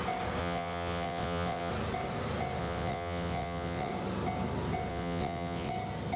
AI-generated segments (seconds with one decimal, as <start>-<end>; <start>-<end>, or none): 0.4-1.7; 2.6-3.9; 4.9-5.7